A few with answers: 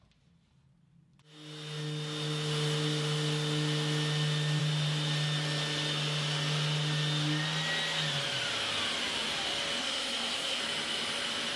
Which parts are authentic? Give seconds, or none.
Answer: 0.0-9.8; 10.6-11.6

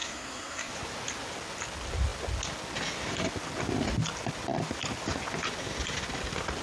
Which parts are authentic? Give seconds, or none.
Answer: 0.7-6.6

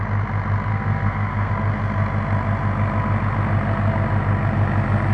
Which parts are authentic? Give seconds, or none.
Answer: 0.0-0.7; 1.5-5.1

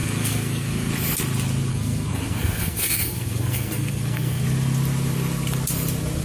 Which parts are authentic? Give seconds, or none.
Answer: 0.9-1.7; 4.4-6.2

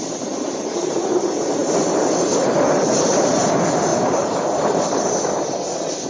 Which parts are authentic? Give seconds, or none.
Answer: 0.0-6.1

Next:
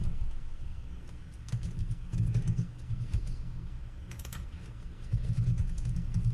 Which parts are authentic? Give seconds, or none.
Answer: none

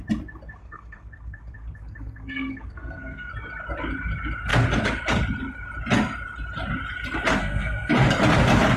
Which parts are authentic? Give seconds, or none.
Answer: 0.0-0.6; 3.3-7.4; 7.9-8.8